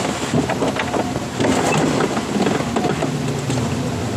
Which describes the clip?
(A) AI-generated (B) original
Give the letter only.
B